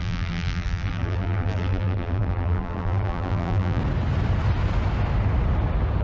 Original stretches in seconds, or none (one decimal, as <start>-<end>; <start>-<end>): 3.8-6.0